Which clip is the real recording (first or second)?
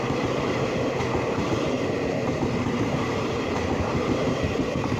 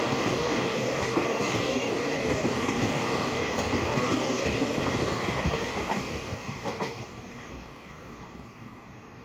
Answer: first